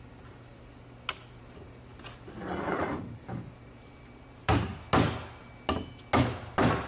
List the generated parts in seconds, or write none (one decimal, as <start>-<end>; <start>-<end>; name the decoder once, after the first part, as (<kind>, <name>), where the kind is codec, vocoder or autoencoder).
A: 0.0-0.5 (vocoder, BigVGAN v2); 1.4-1.9; 2.7-4.7; 6.2-6.9